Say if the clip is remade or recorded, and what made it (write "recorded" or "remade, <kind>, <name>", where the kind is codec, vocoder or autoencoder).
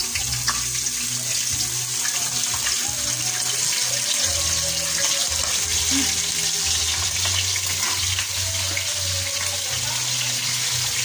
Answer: recorded